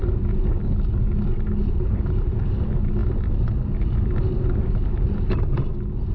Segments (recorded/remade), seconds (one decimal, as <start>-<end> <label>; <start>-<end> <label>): 0.0-1.6 recorded; 1.6-2.4 remade; 2.4-6.1 recorded